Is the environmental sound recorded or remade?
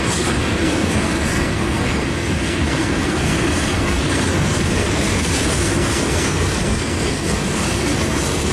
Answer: remade